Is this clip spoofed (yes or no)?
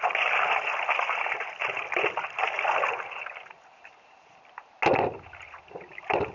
no